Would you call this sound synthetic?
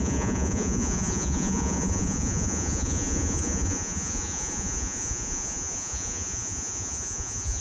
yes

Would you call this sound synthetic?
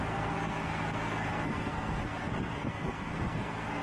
yes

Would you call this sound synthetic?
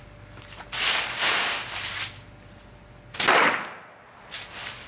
no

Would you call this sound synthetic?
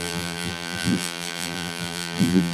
yes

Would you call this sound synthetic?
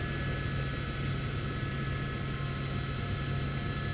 no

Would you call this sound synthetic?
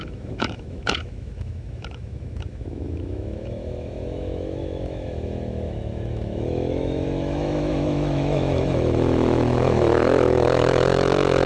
yes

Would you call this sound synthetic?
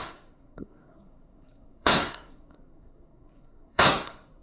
yes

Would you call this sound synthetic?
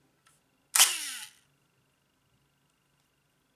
no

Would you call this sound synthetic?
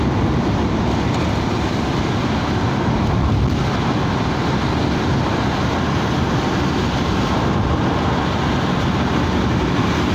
no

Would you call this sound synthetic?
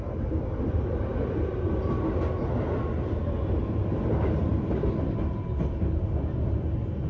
no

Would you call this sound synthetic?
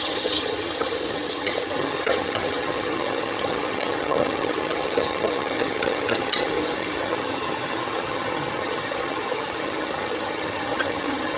yes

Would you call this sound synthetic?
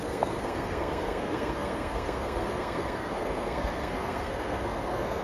yes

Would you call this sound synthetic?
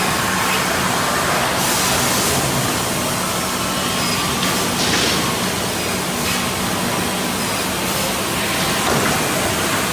no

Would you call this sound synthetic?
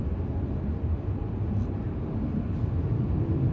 no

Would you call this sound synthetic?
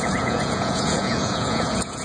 yes